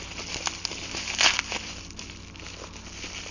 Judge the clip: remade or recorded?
recorded